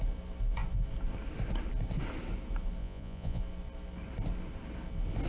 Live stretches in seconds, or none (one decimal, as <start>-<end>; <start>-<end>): 0.0-2.8; 3.4-5.3